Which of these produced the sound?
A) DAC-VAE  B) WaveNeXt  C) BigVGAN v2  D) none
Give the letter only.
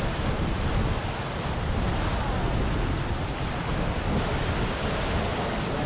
D